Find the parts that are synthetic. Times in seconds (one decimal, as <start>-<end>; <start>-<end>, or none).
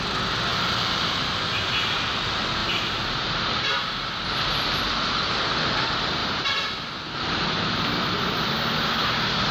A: 0.5-1.3; 2.6-4.8; 6.2-7.4